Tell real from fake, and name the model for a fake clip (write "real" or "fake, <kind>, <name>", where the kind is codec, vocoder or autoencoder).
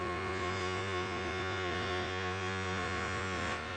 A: fake, vocoder, Vocos